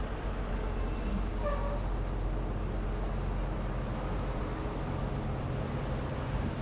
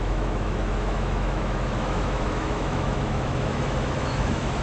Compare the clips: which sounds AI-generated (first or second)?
second